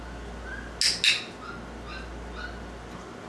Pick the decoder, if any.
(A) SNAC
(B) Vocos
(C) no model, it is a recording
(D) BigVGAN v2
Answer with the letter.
C